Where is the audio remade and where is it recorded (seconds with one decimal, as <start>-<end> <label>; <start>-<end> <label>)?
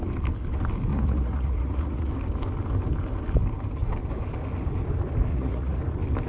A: 0.0-0.9 recorded; 0.9-2.1 remade; 2.1-5.3 recorded; 5.3-5.8 remade; 5.8-6.3 recorded